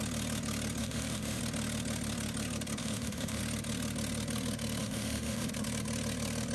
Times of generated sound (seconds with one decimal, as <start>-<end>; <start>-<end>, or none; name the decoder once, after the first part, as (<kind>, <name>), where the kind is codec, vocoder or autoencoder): 0.8-1.4 (autoencoder, DAC-VAE); 2.8-3.4; 4.8-5.5